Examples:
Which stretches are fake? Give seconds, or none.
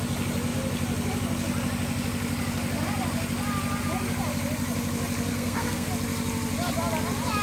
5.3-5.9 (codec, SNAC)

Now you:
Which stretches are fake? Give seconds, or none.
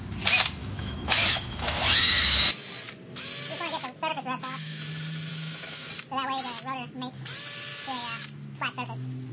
0.6-2.4 (autoencoder, DAC-VAE); 4.1-4.8; 5.3-5.9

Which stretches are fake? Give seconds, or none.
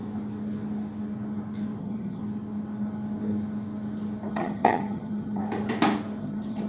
1.8-2.2 (vocoder, HiFi-GAN); 4.3-5.4; 6.2-6.7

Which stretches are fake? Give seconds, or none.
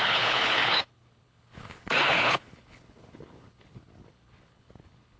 0.0-5.2 (codec, HILCodec)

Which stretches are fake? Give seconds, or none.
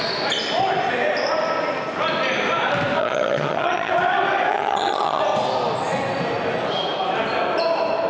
3.0-3.9 (vocoder, HiFi-GAN); 4.5-5.2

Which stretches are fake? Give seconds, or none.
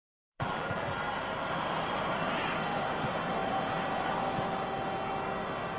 0.0-1.0 (vocoder, BigVGAN v2)